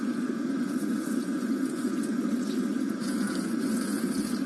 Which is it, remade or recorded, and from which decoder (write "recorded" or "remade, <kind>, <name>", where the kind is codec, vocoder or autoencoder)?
remade, vocoder, Vocos